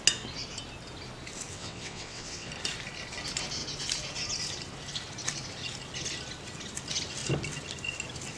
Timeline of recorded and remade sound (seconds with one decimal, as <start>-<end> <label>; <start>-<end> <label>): 0.0-1.5 recorded; 1.5-2.5 remade; 2.5-8.4 recorded